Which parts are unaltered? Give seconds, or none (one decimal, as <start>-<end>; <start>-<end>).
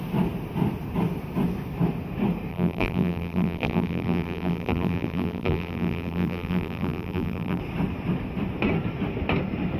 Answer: 0.0-2.5; 7.6-9.8